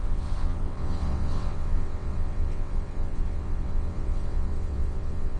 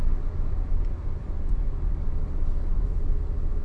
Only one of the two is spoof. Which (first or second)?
first